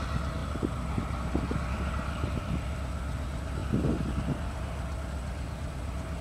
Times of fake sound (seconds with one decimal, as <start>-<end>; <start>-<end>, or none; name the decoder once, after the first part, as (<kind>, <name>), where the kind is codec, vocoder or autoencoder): none